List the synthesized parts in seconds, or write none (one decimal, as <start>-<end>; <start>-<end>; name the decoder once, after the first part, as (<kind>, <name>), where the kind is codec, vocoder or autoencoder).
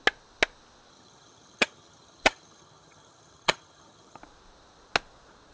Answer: 0.9-4.2 (vocoder, HiFi-GAN)